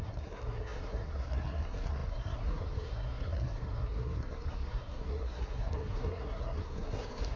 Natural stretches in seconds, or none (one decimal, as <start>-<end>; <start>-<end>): none